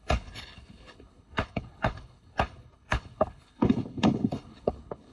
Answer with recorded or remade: remade